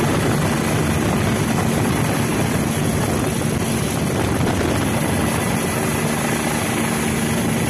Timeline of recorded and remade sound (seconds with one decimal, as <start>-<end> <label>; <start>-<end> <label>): 0.0-7.7 recorded